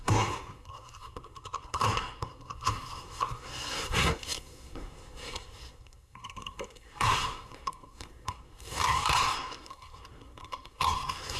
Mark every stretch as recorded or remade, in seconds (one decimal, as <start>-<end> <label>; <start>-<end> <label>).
0.0-11.4 remade

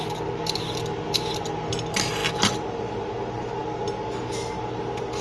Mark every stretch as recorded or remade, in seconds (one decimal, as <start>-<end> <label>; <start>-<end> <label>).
0.0-5.2 recorded

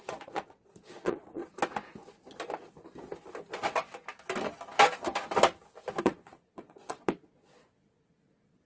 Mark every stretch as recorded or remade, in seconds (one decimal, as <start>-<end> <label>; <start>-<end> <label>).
0.0-1.4 remade; 1.4-6.0 recorded; 6.0-8.7 remade